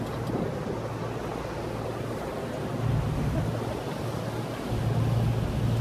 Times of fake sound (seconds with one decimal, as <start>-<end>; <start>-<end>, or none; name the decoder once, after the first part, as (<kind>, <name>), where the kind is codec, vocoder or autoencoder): none

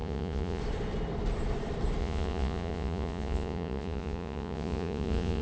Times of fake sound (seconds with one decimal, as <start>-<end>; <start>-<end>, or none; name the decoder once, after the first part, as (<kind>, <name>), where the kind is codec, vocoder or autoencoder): 0.0-0.6 (vocoder, Vocos); 2.0-5.4

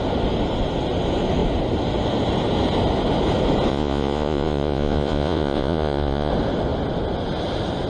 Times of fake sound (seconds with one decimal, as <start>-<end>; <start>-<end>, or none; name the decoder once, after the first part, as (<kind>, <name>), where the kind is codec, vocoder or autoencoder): 3.7-6.3 (vocoder, Vocos)